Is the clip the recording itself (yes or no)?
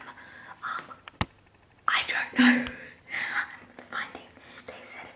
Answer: yes